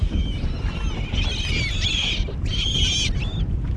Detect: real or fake real